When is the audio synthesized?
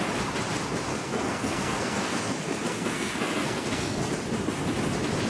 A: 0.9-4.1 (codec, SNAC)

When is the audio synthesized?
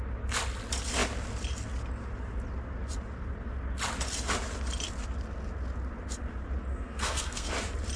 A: 6.7-7.5 (codec, SNAC)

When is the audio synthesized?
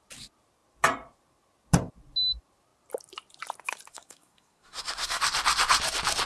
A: 3.9-5.2 (codec, SNAC)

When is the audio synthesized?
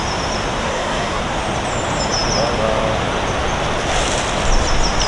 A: 0.6-1.2 (codec, SNAC)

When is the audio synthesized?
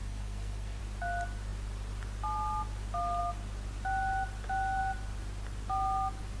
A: 0.0-0.8 (codec, SNAC)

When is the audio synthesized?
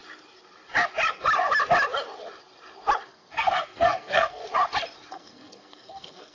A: 3.1-4.4 (codec, SNAC); 5.1-6.3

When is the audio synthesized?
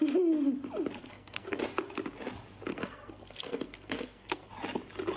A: 1.0-1.6 (codec, SNAC); 2.7-4.5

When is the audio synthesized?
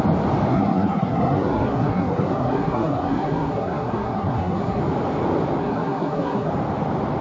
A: 0.5-4.8 (codec, SNAC); 5.6-6.5